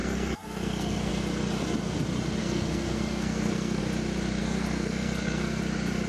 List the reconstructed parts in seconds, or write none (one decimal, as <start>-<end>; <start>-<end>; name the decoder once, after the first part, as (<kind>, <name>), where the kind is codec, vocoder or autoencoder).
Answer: 0.0-1.1 (codec, SNAC); 2.4-3.8; 4.4-5.6